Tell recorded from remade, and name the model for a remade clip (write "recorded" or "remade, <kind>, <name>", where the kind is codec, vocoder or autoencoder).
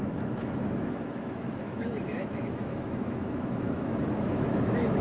remade, autoencoder, DAC-VAE